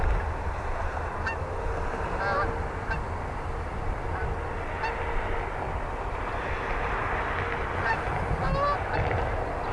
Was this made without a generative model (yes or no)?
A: yes